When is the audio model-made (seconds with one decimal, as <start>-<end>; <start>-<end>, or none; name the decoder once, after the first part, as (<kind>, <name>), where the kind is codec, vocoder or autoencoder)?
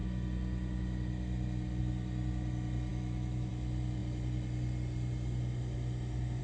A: 2.9-3.5 (autoencoder, DAC-VAE)